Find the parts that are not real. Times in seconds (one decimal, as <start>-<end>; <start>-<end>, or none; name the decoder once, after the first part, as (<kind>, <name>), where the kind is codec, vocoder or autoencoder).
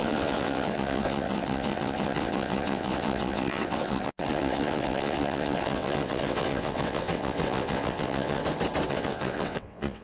0.0-8.4 (vocoder, WaveNeXt); 8.9-10.0